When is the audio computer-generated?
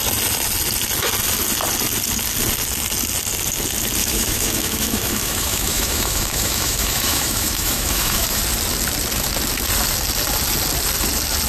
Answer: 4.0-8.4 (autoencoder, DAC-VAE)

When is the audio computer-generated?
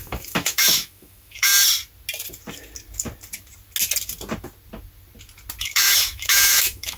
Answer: 0.0-1.5 (autoencoder, DAC-VAE); 5.6-7.0